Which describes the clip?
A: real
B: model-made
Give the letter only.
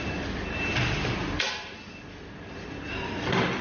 A